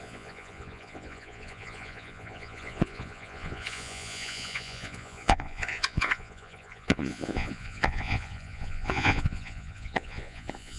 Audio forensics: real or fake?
fake